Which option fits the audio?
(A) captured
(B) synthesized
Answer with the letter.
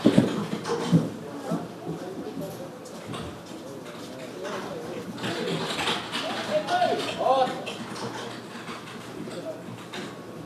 A